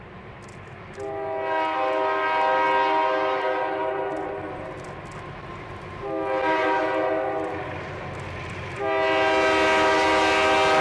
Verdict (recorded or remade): recorded